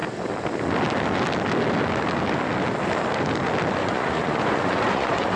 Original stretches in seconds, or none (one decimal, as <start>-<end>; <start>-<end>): 0.0-3.8

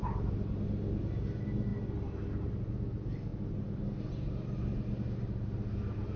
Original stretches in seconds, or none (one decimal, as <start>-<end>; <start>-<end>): 0.0-6.2